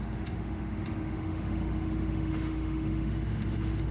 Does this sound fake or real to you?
fake